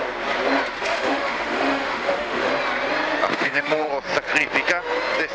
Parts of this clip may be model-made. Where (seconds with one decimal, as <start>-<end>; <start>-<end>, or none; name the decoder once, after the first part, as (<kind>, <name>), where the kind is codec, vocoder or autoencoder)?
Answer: 0.8-2.5 (autoencoder, DAC-VAE); 3.3-3.9